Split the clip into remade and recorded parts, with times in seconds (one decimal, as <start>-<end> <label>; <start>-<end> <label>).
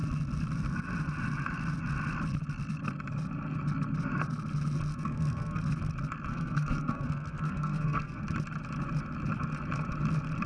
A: 0.0-4.9 recorded; 4.9-5.6 remade; 5.6-6.3 recorded; 6.3-8.2 remade; 8.2-10.5 recorded